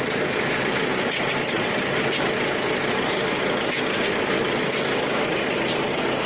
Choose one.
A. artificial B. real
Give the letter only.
B